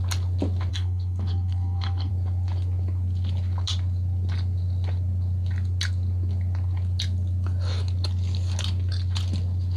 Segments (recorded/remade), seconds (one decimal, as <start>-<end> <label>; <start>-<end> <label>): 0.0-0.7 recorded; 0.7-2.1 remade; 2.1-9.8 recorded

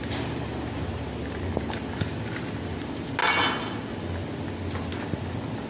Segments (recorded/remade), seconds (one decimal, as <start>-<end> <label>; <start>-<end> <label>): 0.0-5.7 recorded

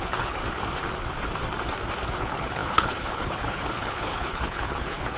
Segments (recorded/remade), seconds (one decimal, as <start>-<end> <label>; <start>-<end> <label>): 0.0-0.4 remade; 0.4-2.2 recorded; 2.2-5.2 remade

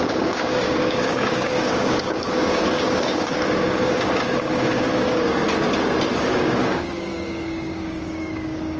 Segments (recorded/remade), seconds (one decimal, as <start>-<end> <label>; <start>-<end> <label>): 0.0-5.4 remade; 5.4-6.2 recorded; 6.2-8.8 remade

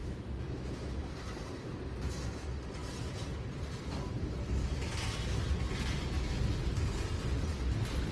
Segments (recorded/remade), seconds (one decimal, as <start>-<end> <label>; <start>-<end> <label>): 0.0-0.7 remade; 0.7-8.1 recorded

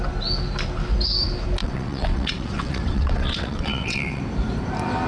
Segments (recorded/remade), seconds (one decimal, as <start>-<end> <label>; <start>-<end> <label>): 0.0-1.6 recorded; 1.6-4.2 remade; 4.2-5.1 recorded

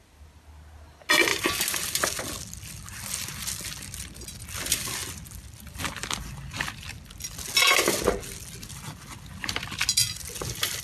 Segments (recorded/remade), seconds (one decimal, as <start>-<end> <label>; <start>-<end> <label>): 0.0-10.8 recorded

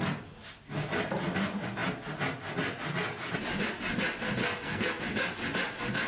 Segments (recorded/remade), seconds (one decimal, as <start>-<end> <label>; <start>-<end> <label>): 0.0-4.4 recorded; 4.4-5.0 remade; 5.0-6.1 recorded